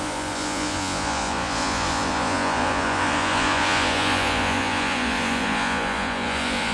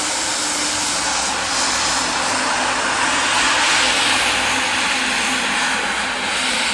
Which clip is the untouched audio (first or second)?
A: second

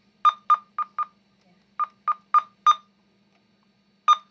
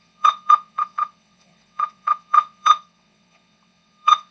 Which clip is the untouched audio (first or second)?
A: first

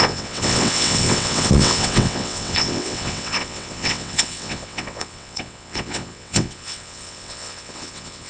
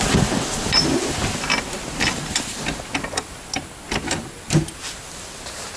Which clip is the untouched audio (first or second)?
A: second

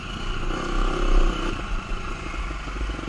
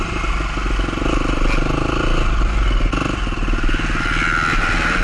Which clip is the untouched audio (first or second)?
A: second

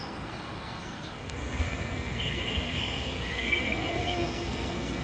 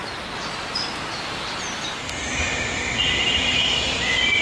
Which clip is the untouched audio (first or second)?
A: second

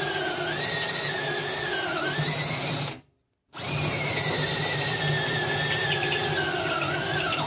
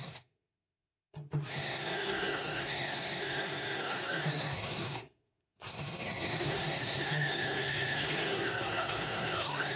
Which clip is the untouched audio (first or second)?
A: first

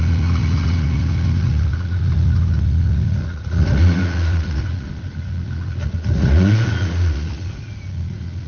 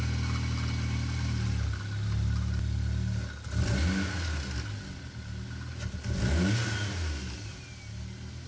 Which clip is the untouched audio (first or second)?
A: second